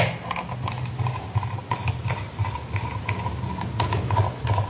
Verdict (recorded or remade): recorded